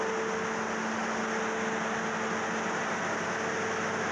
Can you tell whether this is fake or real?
real